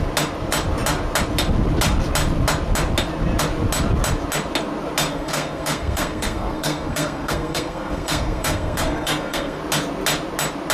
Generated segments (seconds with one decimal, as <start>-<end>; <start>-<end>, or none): 5.1-9.6